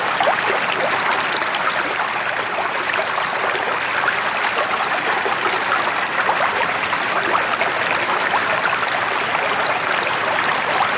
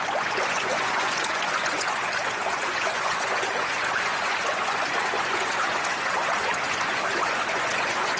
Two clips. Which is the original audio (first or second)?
first